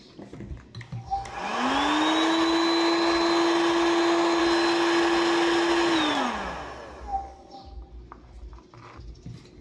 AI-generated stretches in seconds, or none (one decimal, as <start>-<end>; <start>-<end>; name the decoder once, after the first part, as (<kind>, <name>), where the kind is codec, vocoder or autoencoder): 7.1-7.6 (vocoder, BigVGAN v2)